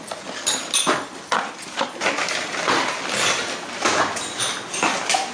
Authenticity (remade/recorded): recorded